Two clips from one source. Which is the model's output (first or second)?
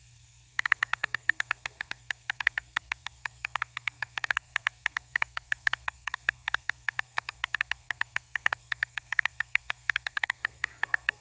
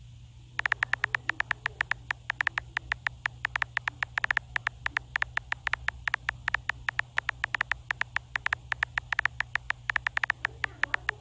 first